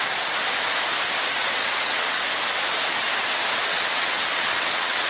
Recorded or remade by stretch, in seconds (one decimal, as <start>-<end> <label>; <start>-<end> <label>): 0.0-1.4 recorded; 1.4-2.2 remade; 2.2-3.7 recorded; 3.7-5.1 remade